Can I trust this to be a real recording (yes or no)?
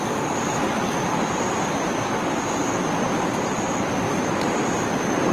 yes